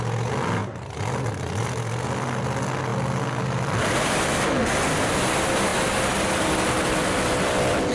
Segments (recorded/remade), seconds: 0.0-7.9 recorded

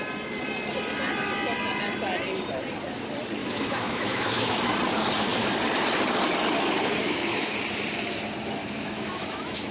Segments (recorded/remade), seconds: 0.0-3.4 recorded; 3.4-4.6 remade; 4.6-7.0 recorded; 7.0-7.5 remade; 7.5-8.6 recorded; 8.6-9.7 remade

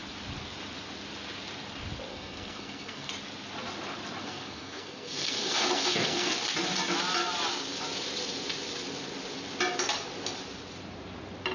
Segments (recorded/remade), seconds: 0.0-2.1 recorded; 2.1-3.1 remade; 3.1-4.2 recorded; 4.2-6.3 remade; 6.3-11.5 recorded

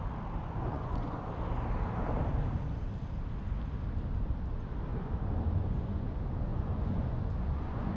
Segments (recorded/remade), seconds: 0.0-0.4 recorded; 0.4-1.3 remade; 1.3-4.9 recorded; 4.9-6.1 remade; 6.1-6.5 recorded; 6.5-8.0 remade